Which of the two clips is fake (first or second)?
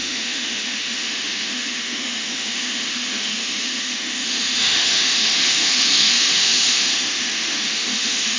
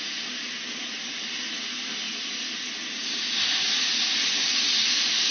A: first